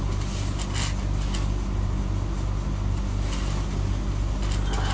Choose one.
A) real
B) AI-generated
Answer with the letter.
A